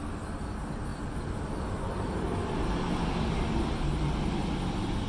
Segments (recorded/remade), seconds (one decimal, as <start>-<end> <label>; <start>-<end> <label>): 0.0-5.1 recorded